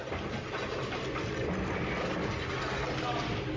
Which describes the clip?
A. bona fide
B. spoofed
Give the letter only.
A